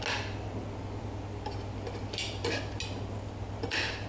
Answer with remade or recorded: recorded